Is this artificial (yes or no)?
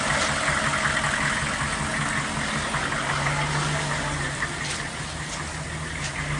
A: no